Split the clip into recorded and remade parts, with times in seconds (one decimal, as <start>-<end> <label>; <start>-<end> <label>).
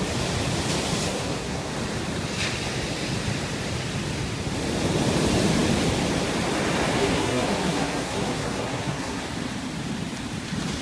0.0-1.1 recorded; 1.1-1.7 remade; 1.7-7.0 recorded; 7.0-9.2 remade; 9.2-10.8 recorded